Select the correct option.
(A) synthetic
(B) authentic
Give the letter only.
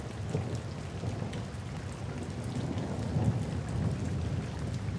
B